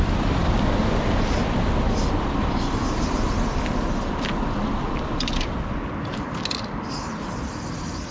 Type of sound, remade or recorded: remade